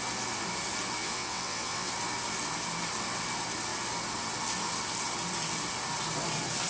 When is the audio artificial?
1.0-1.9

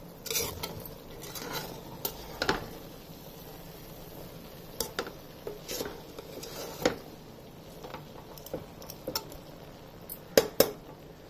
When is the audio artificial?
none

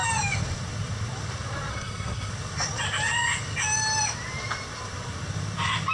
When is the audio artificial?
1.7-2.3